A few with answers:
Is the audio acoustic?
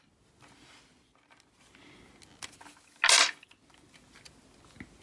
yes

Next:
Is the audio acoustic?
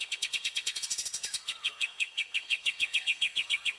no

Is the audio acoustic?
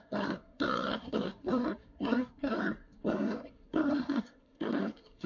no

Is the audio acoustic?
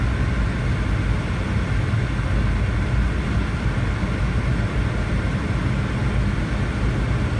yes